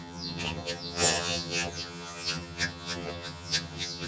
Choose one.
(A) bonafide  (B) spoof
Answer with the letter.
B